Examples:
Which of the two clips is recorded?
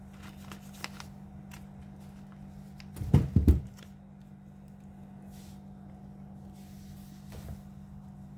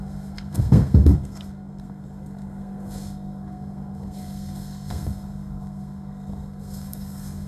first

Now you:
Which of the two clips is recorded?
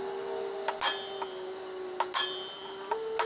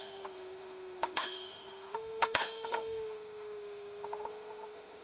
first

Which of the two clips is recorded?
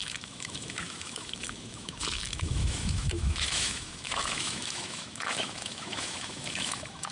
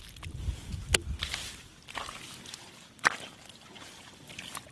second